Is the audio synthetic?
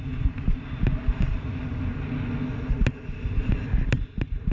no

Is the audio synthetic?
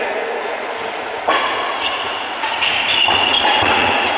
yes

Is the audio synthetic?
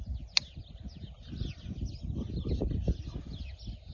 no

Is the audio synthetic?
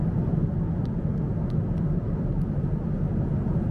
no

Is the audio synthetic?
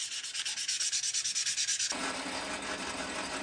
no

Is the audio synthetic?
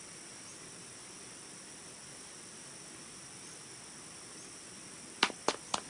no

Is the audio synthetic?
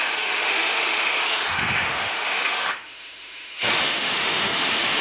yes